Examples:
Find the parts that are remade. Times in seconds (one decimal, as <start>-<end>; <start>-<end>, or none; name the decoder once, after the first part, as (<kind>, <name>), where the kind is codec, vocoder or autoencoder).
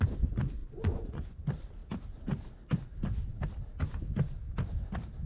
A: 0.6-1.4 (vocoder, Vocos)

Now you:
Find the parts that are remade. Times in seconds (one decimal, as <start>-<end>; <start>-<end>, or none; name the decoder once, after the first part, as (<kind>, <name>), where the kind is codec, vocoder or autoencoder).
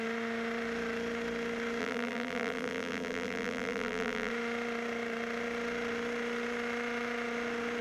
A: 1.8-4.3 (vocoder, BigVGAN v2)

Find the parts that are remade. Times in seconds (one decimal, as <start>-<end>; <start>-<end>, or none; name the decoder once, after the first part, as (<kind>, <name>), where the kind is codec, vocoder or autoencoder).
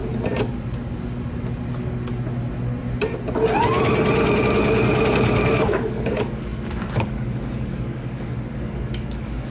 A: 4.4-9.5 (codec, DAC)